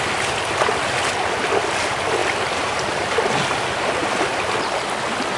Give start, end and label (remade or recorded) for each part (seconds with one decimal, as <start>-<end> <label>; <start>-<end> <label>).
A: 0.0-2.2 recorded; 2.2-3.1 remade; 3.1-4.0 recorded; 4.0-5.4 remade